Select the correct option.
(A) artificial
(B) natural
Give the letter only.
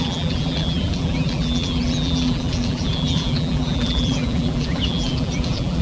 A